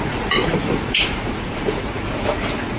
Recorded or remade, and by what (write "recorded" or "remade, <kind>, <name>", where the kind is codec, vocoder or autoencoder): remade, vocoder, Vocos